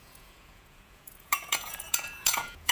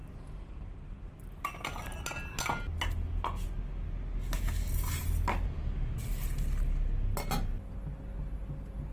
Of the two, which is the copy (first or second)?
first